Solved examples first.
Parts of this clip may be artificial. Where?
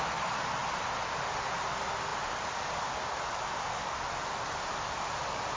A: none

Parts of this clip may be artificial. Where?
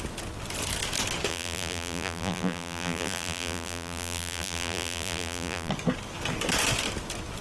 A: 1.3-5.7 (vocoder, BigVGAN v2)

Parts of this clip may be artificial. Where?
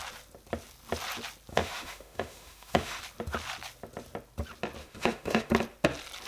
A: 1.5-3.0 (autoencoder, DAC-VAE); 4.8-5.5